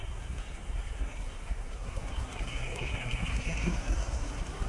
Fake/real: fake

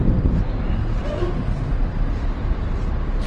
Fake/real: real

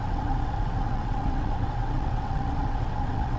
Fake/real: fake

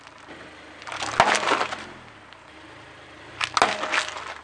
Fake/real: real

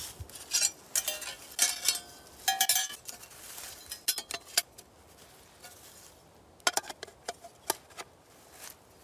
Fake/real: real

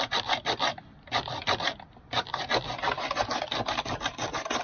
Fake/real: real